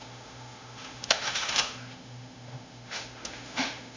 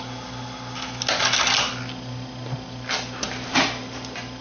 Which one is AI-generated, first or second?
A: first